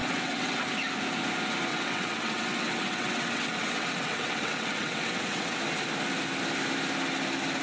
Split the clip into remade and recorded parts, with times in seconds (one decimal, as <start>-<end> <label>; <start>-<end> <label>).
0.0-0.6 remade; 0.6-1.7 recorded; 1.7-5.6 remade; 5.6-7.6 recorded